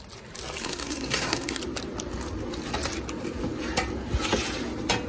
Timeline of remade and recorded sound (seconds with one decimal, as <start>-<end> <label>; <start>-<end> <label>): 0.0-0.6 recorded; 0.6-1.6 remade; 1.6-5.1 recorded